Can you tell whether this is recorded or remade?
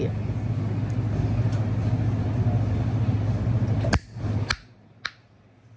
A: recorded